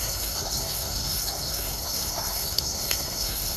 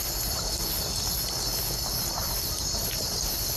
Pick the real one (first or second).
second